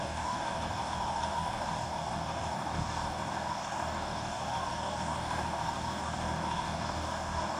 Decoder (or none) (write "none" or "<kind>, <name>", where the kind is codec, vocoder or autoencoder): codec, DAC